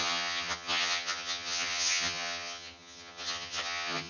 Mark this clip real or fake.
fake